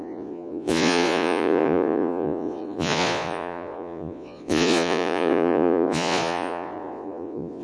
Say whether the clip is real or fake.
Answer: fake